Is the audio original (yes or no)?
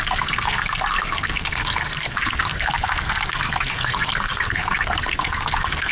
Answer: no